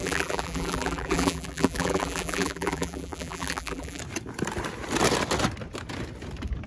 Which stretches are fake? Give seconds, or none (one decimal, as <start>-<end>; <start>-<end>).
0.0-4.0